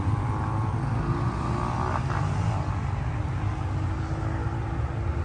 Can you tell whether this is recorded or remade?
recorded